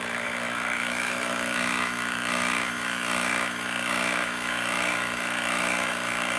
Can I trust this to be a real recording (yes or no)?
no